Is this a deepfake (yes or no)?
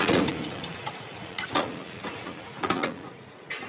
yes